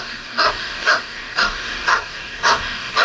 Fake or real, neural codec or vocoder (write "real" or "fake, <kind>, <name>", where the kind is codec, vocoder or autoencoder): fake, codec, DAC